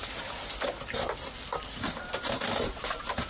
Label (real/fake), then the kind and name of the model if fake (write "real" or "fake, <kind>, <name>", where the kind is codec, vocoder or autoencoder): real